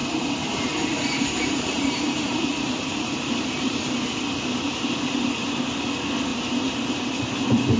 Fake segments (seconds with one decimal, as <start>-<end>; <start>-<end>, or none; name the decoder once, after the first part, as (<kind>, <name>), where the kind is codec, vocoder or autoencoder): 0.0-4.0 (vocoder, BigVGAN v2); 6.3-7.2